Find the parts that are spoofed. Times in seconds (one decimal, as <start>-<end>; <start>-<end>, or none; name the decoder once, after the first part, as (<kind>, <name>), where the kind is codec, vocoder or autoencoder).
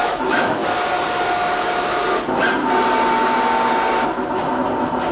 0.0-0.6 (autoencoder, DAC-VAE); 1.6-2.0